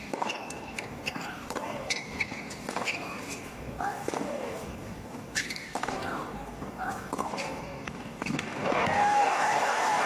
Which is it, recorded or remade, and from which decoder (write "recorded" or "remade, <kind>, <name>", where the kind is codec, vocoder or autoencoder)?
remade, codec, DAC